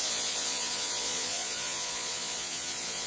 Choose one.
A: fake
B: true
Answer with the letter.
A